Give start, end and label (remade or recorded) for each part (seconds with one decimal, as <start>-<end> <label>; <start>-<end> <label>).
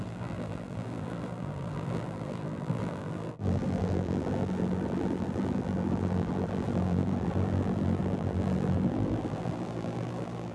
0.0-10.5 remade